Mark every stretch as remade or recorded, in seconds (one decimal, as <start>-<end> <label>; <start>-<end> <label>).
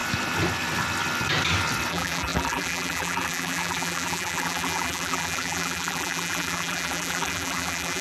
0.0-1.9 recorded; 1.9-8.0 remade